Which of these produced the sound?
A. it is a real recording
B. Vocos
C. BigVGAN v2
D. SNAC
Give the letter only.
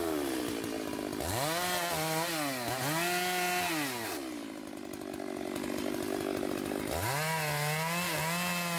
A